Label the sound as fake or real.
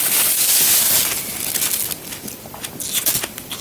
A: real